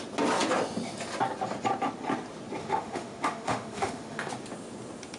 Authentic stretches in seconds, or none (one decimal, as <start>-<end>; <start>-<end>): 0.0-2.6; 4.3-5.2